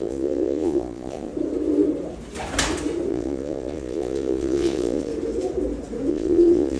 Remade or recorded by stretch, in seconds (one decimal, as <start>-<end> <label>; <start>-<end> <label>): 0.0-1.3 remade; 1.3-3.1 recorded; 3.1-5.1 remade; 5.1-6.1 recorded; 6.1-6.8 remade